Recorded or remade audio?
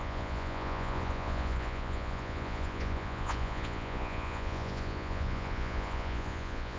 remade